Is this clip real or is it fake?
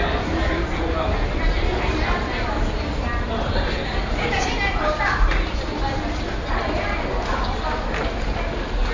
real